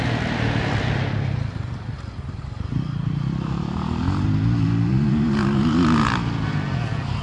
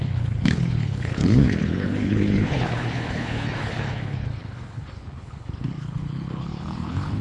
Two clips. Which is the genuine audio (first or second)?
first